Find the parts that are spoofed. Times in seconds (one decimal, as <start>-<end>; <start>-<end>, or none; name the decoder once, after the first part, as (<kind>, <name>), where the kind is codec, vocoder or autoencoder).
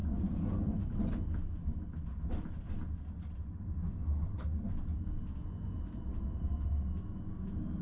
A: 0.0-0.8 (vocoder, Vocos); 5.4-6.0